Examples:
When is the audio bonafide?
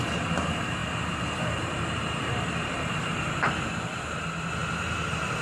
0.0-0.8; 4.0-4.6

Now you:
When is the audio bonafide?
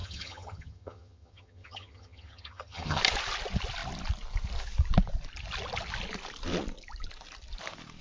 3.0-8.0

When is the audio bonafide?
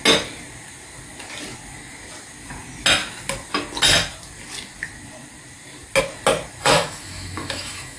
0.0-6.6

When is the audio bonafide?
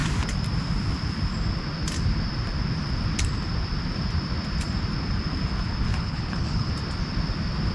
0.0-5.9; 6.7-7.7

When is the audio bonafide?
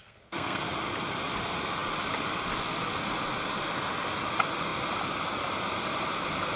0.6-6.6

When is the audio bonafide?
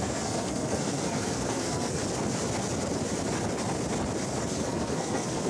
2.0-4.4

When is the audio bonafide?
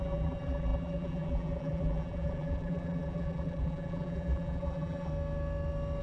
5.1-6.0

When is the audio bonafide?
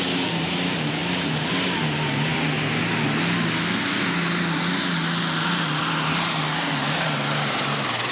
0.0-8.1